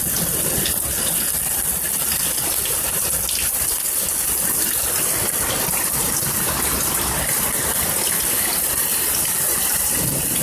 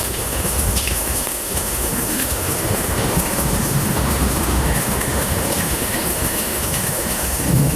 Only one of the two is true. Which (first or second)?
first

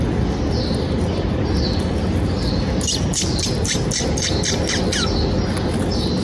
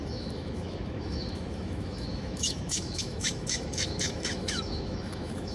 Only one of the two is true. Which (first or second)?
first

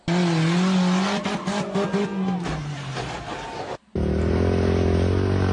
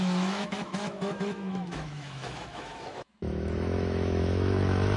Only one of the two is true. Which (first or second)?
first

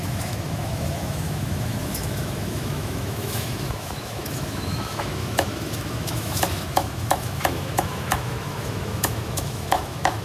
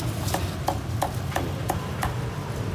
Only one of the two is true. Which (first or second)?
second